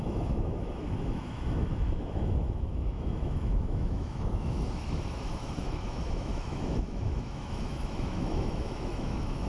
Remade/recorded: remade